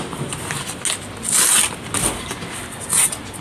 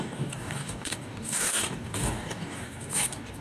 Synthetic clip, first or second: second